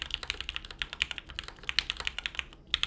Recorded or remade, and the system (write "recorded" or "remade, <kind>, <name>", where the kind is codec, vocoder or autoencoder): recorded